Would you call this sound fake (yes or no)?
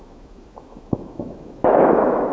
yes